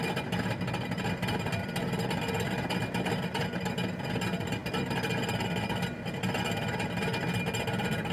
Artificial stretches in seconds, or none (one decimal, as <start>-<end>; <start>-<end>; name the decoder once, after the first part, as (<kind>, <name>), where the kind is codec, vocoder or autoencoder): none